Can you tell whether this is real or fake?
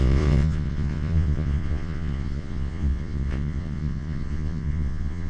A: fake